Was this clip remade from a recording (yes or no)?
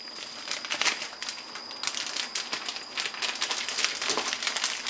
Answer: no